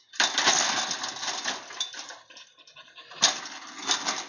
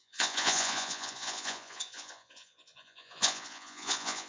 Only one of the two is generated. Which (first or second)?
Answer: second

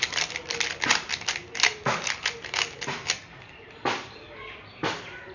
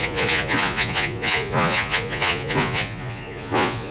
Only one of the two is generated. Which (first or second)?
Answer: second